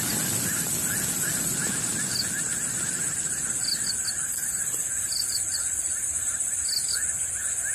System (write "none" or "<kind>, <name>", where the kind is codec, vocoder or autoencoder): none